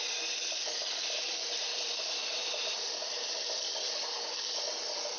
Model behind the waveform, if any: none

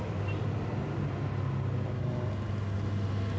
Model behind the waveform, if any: none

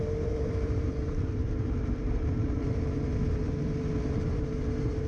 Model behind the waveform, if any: vocoder, BigVGAN v2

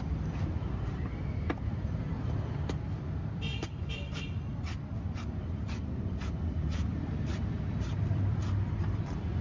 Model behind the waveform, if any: vocoder, BigVGAN v2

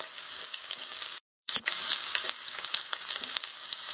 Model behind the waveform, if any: codec, DAC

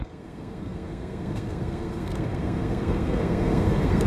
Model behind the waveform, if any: codec, SNAC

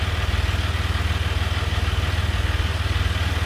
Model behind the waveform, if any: none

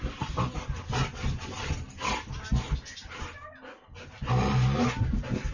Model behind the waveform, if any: none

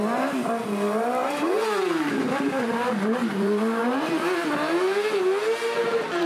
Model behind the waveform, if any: vocoder, BigVGAN v2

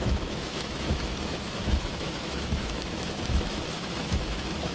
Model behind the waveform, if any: autoencoder, DAC-VAE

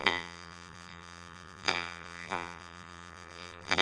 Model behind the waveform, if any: vocoder, BigVGAN v2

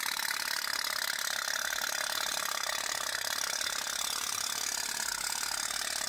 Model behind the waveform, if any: vocoder, BigVGAN v2